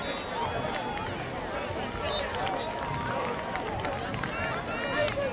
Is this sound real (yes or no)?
yes